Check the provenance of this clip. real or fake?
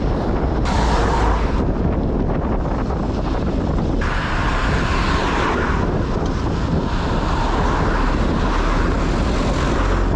real